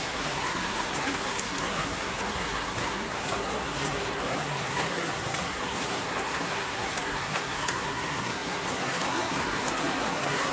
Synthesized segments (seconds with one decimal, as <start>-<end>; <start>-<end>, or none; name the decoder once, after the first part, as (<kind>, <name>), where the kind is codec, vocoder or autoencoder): 0.0-10.5 (codec, SNAC)